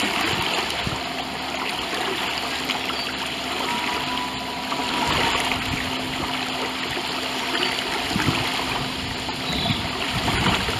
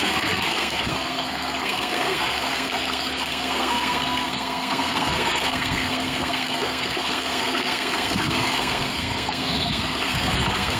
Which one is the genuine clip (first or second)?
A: first